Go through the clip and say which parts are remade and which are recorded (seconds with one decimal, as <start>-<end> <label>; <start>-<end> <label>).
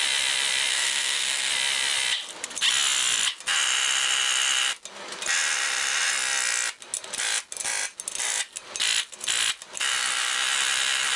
0.0-0.7 recorded; 0.7-1.5 remade; 1.5-11.2 recorded